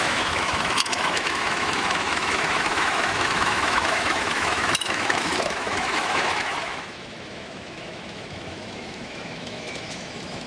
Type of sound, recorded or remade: remade